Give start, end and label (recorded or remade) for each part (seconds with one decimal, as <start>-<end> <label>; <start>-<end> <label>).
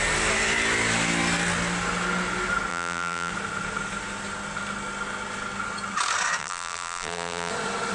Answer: 0.0-2.7 recorded; 2.7-3.3 remade; 3.3-6.4 recorded; 6.4-7.5 remade; 7.5-7.9 recorded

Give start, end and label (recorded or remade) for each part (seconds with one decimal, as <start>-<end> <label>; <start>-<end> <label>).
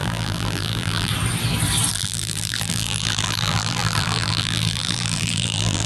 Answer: 0.0-1.1 remade; 1.1-1.9 recorded; 1.9-5.9 remade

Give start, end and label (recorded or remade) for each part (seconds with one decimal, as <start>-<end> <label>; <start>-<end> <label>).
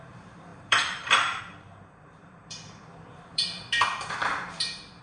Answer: 0.0-5.0 remade